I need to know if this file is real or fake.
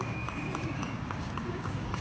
fake